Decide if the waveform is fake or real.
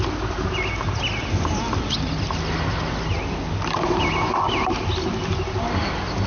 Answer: real